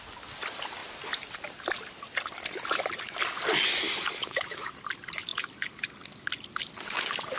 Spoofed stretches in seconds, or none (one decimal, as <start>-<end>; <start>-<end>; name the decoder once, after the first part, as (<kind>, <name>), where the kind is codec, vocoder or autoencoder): 4.2-4.7 (autoencoder, DAC-VAE)

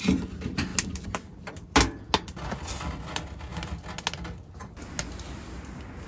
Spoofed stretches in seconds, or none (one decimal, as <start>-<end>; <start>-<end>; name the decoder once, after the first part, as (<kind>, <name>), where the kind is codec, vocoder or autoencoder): none

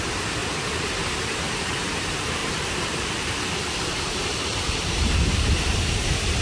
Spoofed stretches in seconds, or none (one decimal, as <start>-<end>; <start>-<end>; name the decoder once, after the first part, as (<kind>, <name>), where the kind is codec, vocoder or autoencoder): 0.0-0.4 (vocoder, BigVGAN v2); 2.0-6.4

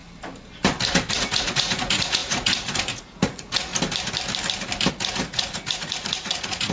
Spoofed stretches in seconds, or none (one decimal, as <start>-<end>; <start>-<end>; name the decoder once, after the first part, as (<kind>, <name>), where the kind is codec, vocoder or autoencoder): 1.1-3.7 (vocoder, Vocos); 4.9-6.7

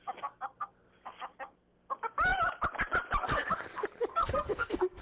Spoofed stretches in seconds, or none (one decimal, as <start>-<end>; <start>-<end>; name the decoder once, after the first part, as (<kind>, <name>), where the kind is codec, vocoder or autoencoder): 4.1-5.0 (codec, SNAC)

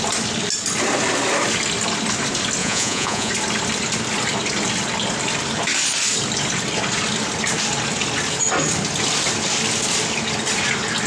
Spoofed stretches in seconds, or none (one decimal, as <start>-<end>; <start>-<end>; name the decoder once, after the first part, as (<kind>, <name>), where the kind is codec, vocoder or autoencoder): 2.6-3.3 (vocoder, Vocos)